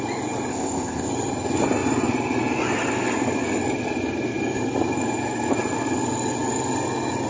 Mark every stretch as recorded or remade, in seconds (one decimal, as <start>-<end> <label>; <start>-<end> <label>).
0.0-0.5 recorded; 0.5-1.1 remade; 1.1-7.3 recorded